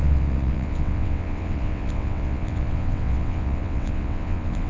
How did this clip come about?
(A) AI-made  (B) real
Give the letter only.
A